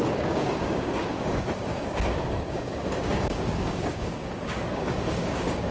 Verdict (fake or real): fake